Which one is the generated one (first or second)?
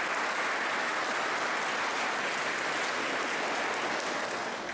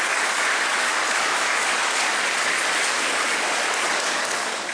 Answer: second